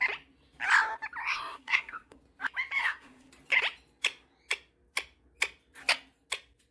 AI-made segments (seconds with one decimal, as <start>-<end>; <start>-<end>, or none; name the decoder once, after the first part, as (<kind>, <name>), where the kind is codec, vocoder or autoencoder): 1.2-2.2 (codec, SNAC); 2.8-3.3